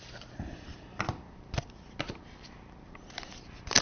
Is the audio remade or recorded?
remade